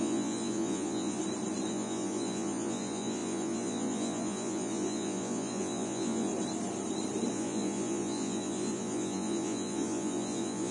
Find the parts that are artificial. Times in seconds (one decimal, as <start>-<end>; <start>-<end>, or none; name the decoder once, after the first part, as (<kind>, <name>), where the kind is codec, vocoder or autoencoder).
0.0-1.2 (vocoder, Vocos); 1.7-6.3; 7.3-10.7